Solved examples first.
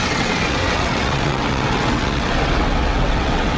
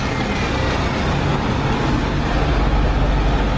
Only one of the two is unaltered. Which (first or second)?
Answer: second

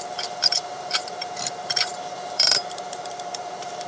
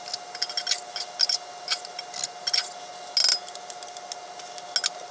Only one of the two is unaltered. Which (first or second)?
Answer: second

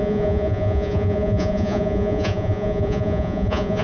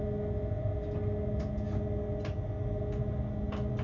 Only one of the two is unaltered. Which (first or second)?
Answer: second